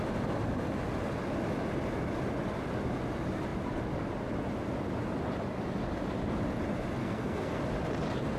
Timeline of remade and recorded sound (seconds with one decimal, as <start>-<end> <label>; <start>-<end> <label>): 0.0-7.0 recorded; 7.0-7.6 remade; 7.6-8.4 recorded

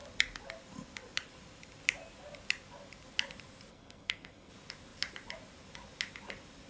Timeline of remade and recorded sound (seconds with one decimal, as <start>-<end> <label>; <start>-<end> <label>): 0.0-3.7 recorded; 3.7-4.5 remade; 4.5-6.7 recorded

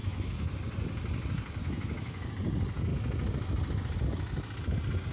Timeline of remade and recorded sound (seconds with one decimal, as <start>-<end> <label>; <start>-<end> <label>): 0.0-0.6 remade; 0.6-1.6 recorded; 1.6-2.3 remade; 2.3-5.1 recorded

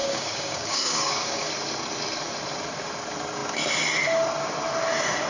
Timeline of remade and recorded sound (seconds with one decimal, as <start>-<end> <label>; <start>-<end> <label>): 0.0-1.5 remade; 1.5-5.3 recorded

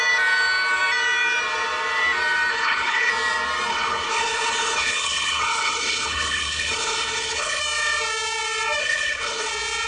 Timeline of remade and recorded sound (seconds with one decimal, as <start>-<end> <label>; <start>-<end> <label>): 0.0-2.5 recorded; 2.5-3.1 remade; 3.1-3.7 recorded; 3.7-7.6 remade; 7.6-8.8 recorded; 8.8-9.5 remade; 9.5-9.9 recorded

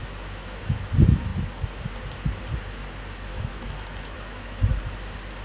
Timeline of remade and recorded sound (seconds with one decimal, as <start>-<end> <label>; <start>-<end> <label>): 0.0-0.8 remade; 0.8-3.3 recorded; 3.3-4.6 remade; 4.6-5.4 recorded

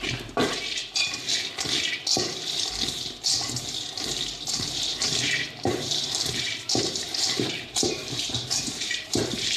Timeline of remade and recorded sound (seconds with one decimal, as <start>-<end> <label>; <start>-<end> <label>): 0.0-0.8 remade; 0.8-4.5 recorded; 4.5-9.6 remade